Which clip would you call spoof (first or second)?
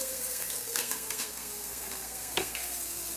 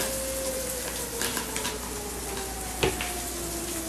first